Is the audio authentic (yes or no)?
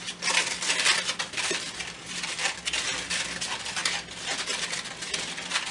yes